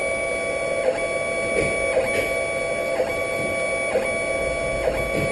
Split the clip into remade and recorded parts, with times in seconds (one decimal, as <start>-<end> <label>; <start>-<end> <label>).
0.0-5.3 recorded